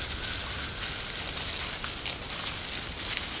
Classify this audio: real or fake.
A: real